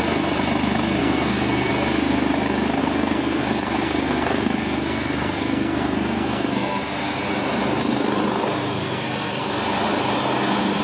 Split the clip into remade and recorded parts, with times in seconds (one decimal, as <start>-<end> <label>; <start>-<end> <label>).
0.0-1.0 recorded; 1.0-1.7 remade; 1.7-2.8 recorded; 2.8-6.8 remade; 6.8-8.8 recorded; 8.8-9.5 remade; 9.5-10.8 recorded